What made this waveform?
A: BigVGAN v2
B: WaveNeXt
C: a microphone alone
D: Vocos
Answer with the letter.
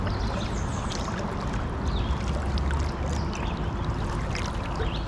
C